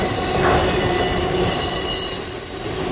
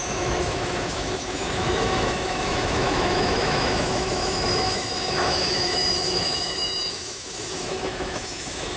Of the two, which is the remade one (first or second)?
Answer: second